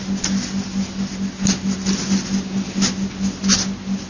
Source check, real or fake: real